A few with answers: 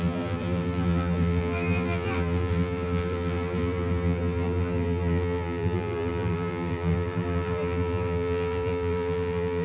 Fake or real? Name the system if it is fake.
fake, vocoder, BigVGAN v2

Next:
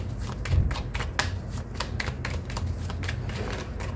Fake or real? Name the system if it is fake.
real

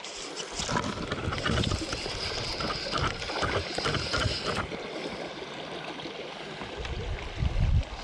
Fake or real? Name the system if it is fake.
real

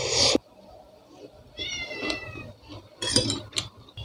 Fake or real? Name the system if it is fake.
fake, vocoder, BigVGAN v2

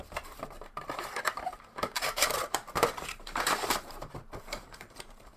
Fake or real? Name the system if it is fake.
fake, vocoder, BigVGAN v2